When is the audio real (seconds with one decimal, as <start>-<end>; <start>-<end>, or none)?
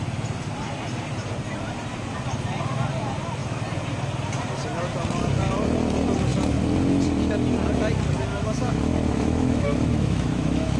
0.0-8.3